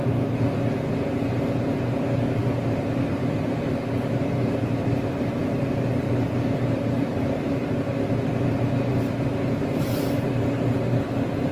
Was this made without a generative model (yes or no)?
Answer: no